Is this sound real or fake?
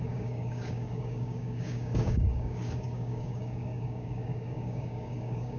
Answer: fake